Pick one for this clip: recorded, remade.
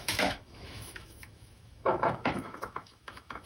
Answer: remade